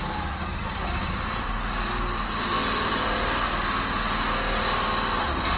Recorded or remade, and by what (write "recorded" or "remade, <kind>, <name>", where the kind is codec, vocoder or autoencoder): recorded